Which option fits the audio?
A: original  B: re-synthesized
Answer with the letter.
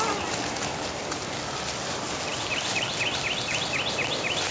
A